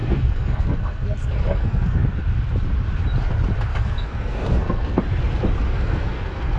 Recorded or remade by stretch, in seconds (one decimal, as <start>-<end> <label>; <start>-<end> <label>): 0.0-2.2 remade; 2.2-3.7 recorded; 3.7-5.0 remade; 5.0-5.7 recorded; 5.7-6.6 remade